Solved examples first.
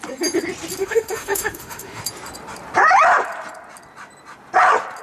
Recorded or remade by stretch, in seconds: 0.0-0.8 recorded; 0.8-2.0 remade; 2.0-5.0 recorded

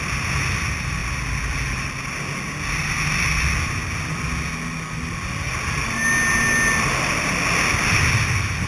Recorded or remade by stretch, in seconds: 0.0-8.7 recorded

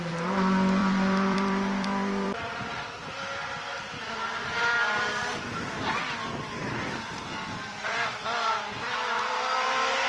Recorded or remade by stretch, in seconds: 0.0-0.8 recorded; 0.8-5.6 remade; 5.6-6.3 recorded; 6.3-10.1 remade

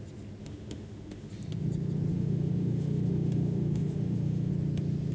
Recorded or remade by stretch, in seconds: 0.0-0.4 recorded; 0.4-1.3 remade; 1.3-2.1 recorded; 2.1-4.5 remade; 4.5-5.1 recorded

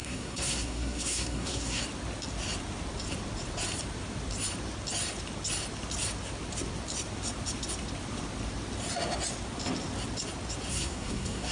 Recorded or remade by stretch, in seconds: 0.0-1.8 remade; 1.8-10.7 recorded; 10.7-11.5 remade

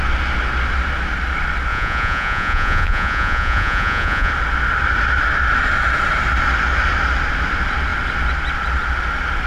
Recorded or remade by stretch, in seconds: 0.0-1.7 recorded; 1.7-4.3 remade; 4.3-9.5 recorded

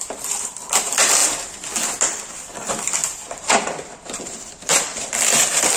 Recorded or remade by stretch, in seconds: 0.0-1.2 remade; 1.2-2.0 recorded; 2.0-5.8 remade

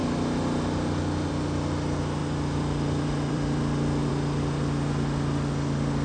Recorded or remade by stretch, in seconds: 0.0-2.2 recorded; 2.2-4.1 remade; 4.1-6.0 recorded